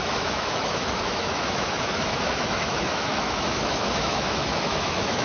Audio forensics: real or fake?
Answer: fake